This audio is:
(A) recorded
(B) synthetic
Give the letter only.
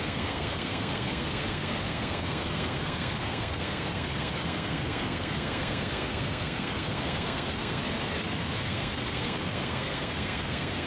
B